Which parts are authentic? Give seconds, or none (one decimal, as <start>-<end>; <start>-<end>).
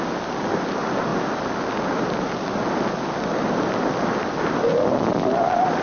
0.0-5.8